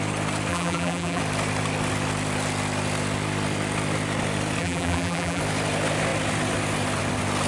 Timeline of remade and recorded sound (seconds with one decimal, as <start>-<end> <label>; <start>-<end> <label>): 0.0-0.5 recorded; 0.5-1.2 remade; 1.2-4.6 recorded; 4.6-5.4 remade; 5.4-7.5 recorded